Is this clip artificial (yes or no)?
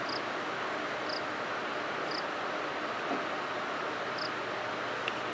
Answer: no